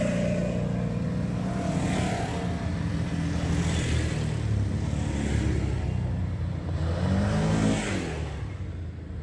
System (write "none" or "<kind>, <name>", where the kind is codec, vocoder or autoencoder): none